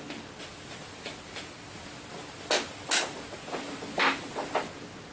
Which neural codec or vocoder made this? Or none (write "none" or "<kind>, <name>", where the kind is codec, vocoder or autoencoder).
none